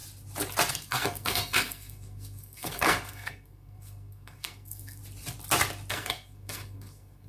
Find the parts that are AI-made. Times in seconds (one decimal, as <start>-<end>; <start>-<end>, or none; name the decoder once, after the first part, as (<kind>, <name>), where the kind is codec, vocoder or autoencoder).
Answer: 0.7-5.0 (codec, SNAC); 5.9-7.3